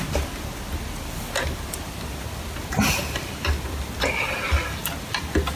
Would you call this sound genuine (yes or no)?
yes